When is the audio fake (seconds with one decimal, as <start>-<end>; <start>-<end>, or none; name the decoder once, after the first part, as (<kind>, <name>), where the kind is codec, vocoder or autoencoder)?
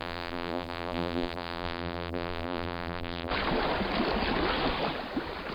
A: 0.0-3.3 (vocoder, BigVGAN v2)